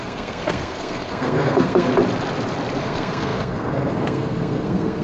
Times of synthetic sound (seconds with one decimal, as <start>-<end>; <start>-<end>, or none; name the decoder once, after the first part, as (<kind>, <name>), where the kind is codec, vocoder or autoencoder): 0.0-1.9 (codec, SNAC); 2.8-5.0